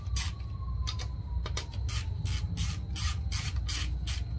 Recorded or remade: recorded